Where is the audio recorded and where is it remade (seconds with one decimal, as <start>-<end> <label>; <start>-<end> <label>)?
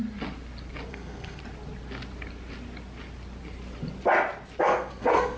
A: 0.0-0.9 recorded; 0.9-1.4 remade; 1.4-4.6 recorded; 4.6-5.4 remade